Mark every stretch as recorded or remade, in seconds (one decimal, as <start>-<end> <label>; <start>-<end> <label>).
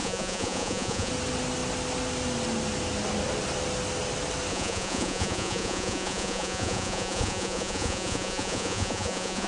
0.0-1.1 remade; 1.1-4.5 recorded; 4.5-9.5 remade